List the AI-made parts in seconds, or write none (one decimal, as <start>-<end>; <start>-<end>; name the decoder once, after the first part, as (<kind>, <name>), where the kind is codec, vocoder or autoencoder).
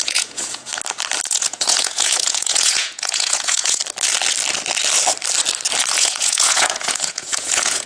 0.0-0.7 (vocoder, Vocos); 1.3-3.8; 5.9-7.9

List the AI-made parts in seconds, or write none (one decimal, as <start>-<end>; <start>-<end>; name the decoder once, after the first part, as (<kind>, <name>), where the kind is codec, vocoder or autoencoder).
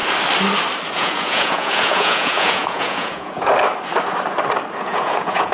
0.9-3.5 (vocoder, Vocos); 4.8-5.5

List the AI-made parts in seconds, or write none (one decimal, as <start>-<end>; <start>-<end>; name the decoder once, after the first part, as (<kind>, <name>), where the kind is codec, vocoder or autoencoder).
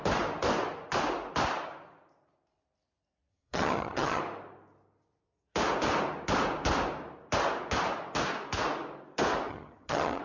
3.3-4.2 (vocoder, HiFi-GAN); 9.5-10.2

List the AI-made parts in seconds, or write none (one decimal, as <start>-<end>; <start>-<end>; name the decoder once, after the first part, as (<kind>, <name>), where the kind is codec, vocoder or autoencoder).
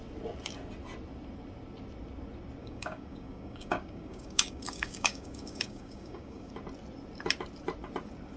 2.6-6.5 (codec, DAC)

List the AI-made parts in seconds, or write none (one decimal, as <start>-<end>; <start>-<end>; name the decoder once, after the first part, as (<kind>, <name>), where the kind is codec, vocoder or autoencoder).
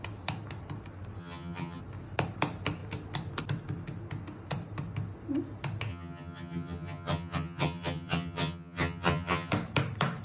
1.2-1.8 (vocoder, HiFi-GAN); 5.9-9.5